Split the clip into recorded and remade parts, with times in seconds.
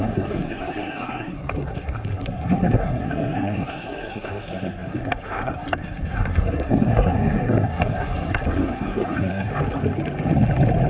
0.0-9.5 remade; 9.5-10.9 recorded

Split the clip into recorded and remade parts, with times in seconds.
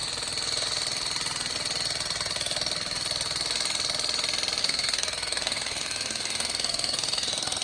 0.0-4.6 recorded; 4.6-7.6 remade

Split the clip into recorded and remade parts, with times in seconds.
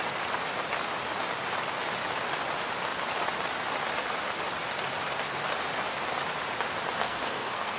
0.0-7.0 recorded; 7.0-7.8 remade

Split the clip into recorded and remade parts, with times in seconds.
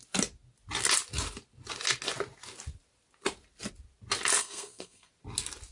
0.0-4.4 recorded; 4.4-5.1 remade; 5.1-5.7 recorded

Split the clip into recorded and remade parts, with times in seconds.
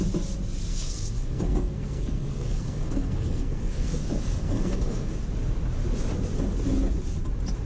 0.0-0.7 recorded; 0.7-5.1 remade; 5.1-7.7 recorded